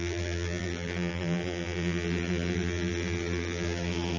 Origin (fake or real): fake